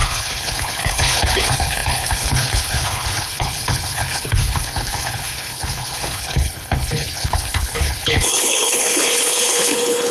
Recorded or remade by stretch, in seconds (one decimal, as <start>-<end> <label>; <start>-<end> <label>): 0.0-10.1 remade